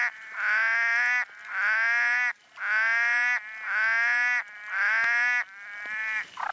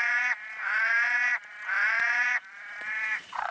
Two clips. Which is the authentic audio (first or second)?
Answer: first